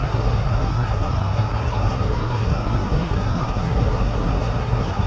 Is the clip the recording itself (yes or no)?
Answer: no